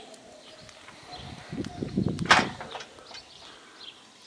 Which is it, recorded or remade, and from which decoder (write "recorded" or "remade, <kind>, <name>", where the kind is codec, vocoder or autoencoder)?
recorded